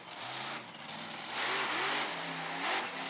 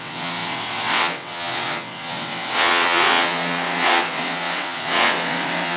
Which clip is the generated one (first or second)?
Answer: second